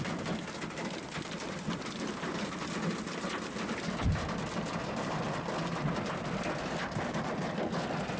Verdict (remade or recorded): recorded